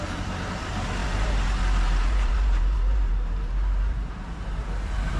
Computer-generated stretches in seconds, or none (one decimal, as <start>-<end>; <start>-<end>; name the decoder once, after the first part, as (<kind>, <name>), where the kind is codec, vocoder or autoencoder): 0.0-5.2 (vocoder, BigVGAN v2)